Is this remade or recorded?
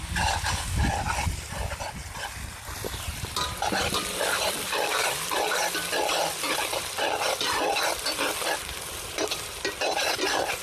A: recorded